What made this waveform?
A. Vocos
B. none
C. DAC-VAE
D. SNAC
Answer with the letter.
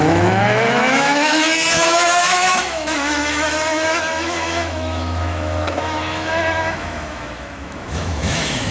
C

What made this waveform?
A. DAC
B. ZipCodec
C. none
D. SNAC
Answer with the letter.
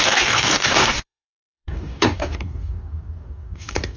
A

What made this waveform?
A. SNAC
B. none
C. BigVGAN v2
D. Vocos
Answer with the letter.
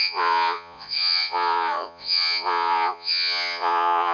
D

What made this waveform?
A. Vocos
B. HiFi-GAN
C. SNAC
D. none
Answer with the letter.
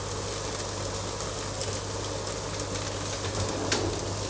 D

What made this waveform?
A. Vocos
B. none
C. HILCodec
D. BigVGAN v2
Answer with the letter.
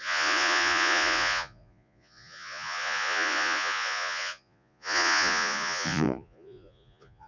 A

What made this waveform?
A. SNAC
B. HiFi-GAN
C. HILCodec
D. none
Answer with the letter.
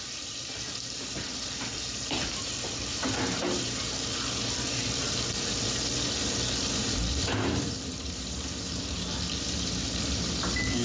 D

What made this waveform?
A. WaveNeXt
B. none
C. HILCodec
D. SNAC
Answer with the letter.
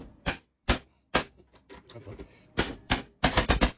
B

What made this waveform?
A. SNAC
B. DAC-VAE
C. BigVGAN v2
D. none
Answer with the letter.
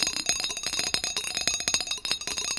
D